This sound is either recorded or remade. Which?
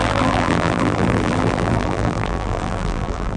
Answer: remade